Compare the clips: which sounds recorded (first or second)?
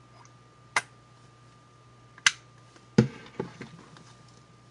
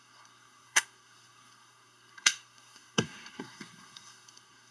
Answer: first